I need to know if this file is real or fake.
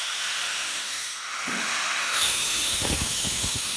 fake